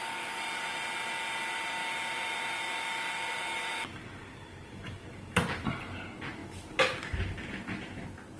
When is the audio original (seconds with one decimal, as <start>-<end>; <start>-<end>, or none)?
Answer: 0.0-8.4

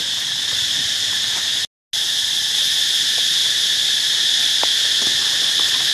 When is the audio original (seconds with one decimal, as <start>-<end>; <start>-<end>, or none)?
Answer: 0.0-3.4; 4.6-5.9

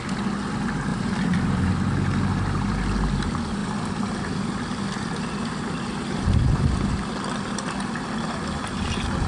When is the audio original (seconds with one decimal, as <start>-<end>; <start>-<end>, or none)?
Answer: 0.0-0.9; 1.7-3.6; 6.1-9.3

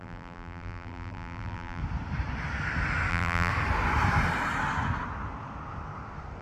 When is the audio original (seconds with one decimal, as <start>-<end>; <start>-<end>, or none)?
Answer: 1.8-3.1; 3.5-6.4

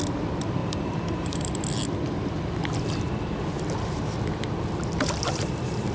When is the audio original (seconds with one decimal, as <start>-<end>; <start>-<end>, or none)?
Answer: 0.0-0.6; 1.5-5.9

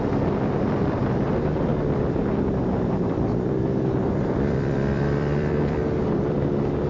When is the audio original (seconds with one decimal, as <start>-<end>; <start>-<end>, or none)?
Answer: 0.0-1.7; 5.8-6.9

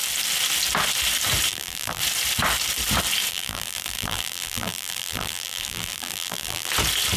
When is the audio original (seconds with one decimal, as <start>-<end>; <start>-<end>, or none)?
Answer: 0.0-1.5; 2.0-3.3; 6.7-7.2